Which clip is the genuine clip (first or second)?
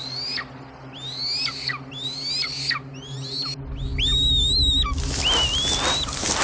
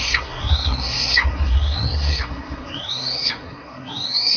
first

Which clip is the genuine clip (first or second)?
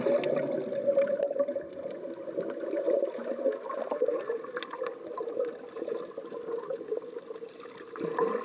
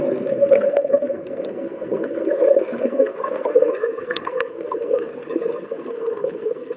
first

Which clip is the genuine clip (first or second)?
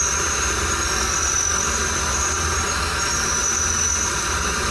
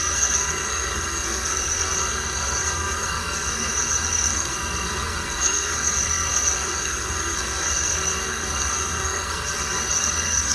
first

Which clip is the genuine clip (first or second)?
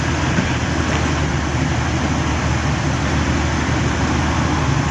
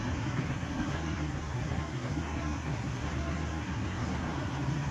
first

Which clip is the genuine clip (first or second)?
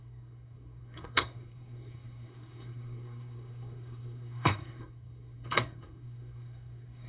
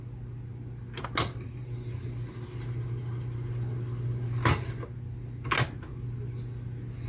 second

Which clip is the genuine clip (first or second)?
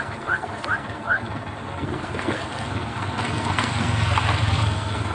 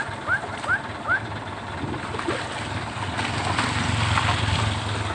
second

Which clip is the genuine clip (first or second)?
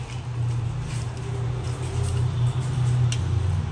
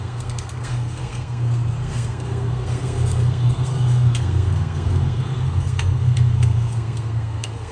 first